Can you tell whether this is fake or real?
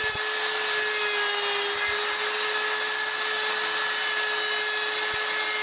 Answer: real